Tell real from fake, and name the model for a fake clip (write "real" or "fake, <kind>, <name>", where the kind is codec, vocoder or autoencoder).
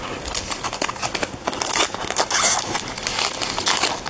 real